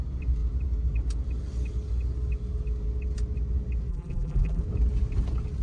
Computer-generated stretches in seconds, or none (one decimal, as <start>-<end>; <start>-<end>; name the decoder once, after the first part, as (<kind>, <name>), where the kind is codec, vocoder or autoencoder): 3.9-4.6 (vocoder, BigVGAN v2)